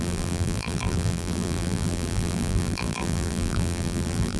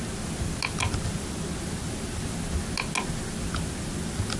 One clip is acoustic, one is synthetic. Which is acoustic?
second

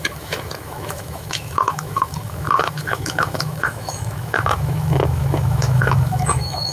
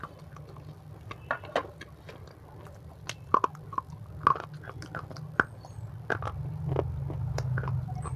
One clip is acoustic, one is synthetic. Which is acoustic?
second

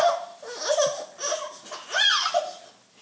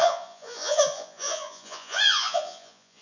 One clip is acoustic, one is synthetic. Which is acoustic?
first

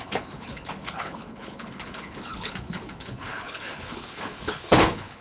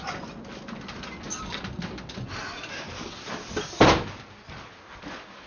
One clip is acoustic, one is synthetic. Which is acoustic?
second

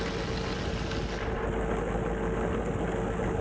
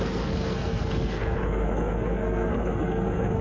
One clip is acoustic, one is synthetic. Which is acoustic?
first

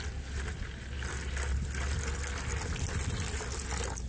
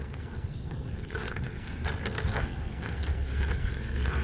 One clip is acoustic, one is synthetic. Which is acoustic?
first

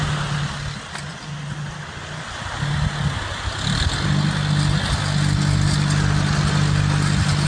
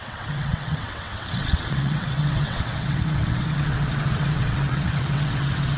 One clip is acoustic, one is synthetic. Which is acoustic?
first